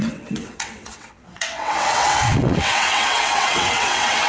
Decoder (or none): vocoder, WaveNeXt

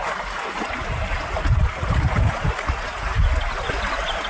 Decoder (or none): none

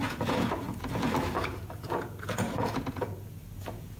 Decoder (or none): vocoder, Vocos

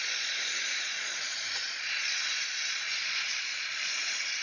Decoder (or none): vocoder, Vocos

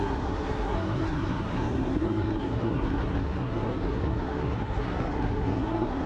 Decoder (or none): codec, SNAC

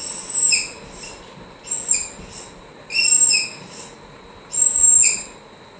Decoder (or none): none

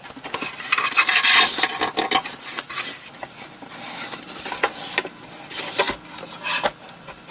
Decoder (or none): none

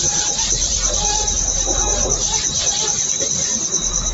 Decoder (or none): vocoder, BigVGAN v2